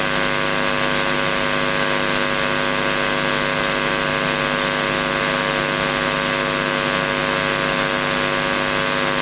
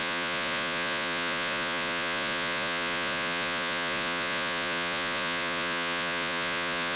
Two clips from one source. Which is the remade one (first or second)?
second